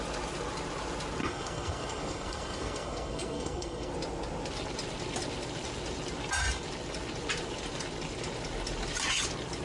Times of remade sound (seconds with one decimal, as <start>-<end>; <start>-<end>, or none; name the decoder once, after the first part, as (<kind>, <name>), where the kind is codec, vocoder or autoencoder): 1.2-3.9 (codec, SNAC)